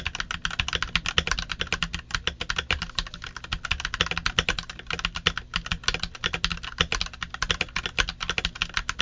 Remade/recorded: recorded